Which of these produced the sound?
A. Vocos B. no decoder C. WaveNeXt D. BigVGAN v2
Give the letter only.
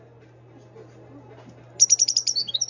B